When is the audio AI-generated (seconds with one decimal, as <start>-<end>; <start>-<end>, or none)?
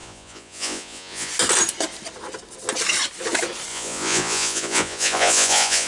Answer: 0.0-1.3; 3.7-5.9